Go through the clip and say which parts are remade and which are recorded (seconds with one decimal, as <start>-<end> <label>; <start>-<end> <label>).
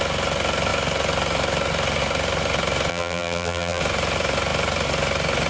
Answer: 0.0-2.9 recorded; 2.9-3.8 remade; 3.8-5.5 recorded